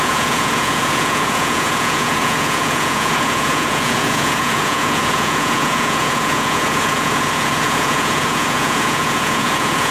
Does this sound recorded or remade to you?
remade